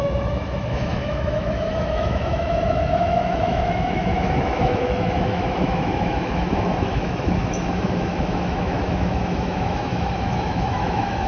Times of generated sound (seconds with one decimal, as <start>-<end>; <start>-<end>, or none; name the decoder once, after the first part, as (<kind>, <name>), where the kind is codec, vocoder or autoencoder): 0.0-11.3 (autoencoder, DAC-VAE)